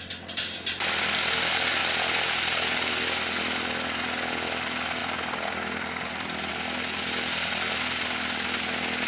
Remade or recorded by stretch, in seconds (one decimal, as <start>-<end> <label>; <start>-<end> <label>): 0.0-1.8 recorded; 1.8-2.9 remade; 2.9-5.0 recorded; 5.0-6.5 remade; 6.5-9.1 recorded